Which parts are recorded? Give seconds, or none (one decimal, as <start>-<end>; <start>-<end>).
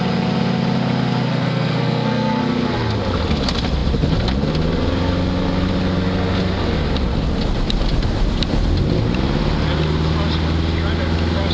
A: 0.0-1.3; 2.4-11.5